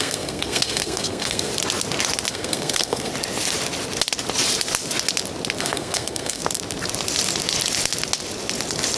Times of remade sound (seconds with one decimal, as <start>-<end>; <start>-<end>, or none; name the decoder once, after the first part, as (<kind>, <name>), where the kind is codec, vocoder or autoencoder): 0.0-1.5 (codec, SNAC); 2.3-3.1; 5.6-6.4